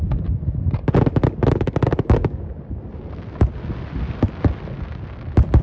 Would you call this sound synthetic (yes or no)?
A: no